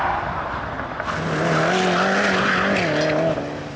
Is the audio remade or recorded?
recorded